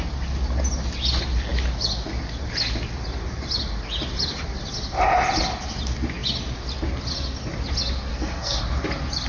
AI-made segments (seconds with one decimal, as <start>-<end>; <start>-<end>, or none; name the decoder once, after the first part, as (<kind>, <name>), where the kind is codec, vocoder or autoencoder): 8.1-8.6 (codec, SNAC)